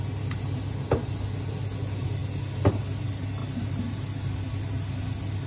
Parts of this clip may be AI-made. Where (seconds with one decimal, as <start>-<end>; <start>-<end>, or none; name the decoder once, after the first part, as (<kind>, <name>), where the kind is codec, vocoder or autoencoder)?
none